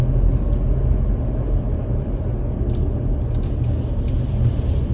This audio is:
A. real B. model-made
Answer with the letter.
A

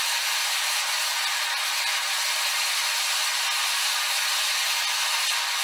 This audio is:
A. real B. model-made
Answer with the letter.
A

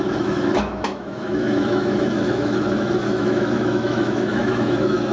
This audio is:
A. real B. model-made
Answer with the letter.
B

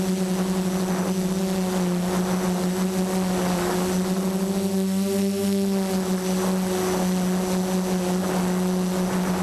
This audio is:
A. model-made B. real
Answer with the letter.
B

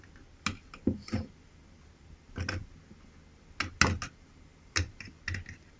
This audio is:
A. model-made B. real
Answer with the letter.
B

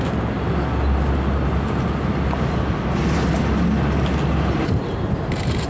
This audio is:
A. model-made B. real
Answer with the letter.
B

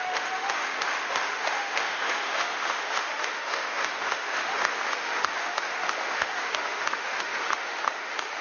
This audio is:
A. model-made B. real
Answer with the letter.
A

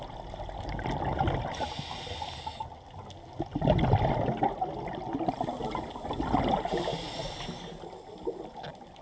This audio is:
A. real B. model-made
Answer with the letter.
A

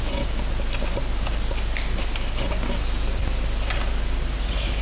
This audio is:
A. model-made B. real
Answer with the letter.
B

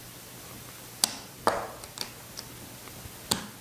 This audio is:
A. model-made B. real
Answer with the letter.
B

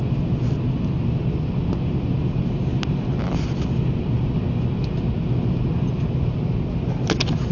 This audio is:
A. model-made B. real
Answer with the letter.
B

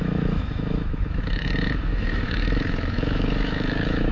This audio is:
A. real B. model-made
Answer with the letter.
B